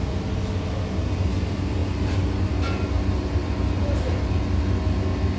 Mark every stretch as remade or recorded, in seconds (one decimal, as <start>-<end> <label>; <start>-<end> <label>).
0.0-5.4 recorded